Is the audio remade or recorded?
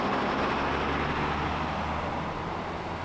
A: recorded